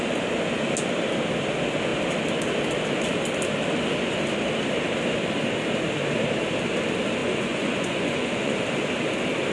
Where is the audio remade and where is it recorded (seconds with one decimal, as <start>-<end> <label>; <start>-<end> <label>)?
0.0-7.2 recorded; 7.2-8.6 remade; 8.6-9.5 recorded